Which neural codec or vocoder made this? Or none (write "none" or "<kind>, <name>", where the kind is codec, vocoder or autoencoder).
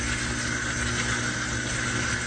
none